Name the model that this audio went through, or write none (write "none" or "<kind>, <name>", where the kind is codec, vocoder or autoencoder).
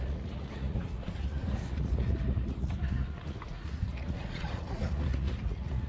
vocoder, Vocos